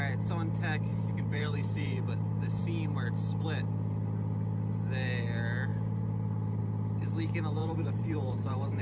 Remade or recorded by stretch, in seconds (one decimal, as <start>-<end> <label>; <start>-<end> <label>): 0.0-0.9 recorded; 0.9-2.6 remade; 2.6-7.6 recorded; 7.6-8.8 remade